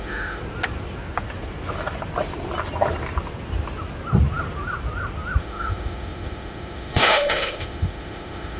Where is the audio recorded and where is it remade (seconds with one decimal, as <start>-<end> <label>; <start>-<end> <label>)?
0.0-0.4 remade; 0.4-5.4 recorded; 5.4-8.6 remade